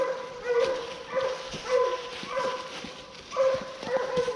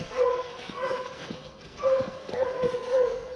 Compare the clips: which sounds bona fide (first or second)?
first